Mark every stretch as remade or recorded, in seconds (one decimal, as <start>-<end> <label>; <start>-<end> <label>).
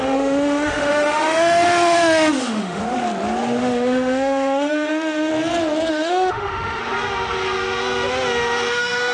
0.0-2.8 remade; 2.8-3.6 recorded; 3.6-5.3 remade; 5.3-5.9 recorded; 5.9-6.8 remade; 6.8-8.7 recorded; 8.7-9.1 remade